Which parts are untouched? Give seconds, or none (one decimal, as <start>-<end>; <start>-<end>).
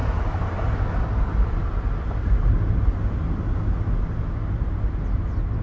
0.0-5.6